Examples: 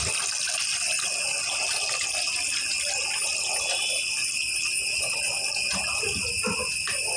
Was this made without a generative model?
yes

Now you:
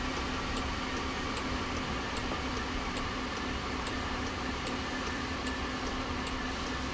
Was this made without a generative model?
yes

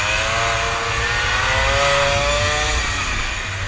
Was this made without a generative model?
yes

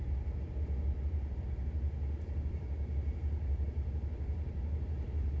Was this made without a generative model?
no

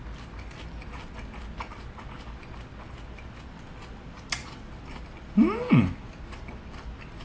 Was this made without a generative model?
yes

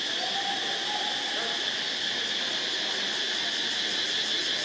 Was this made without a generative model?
yes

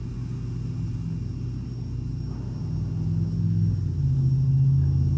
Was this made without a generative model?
yes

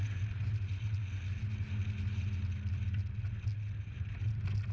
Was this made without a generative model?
yes